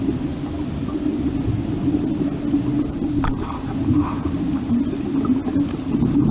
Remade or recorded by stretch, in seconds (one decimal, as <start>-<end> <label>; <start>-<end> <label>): 0.0-2.9 recorded; 2.9-4.9 remade; 4.9-6.3 recorded